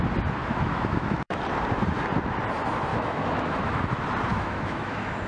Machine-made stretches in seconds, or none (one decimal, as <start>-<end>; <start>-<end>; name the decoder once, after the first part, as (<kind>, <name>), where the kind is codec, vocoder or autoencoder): 0.4-1.4 (autoencoder, DAC-VAE); 2.9-3.9; 4.3-5.3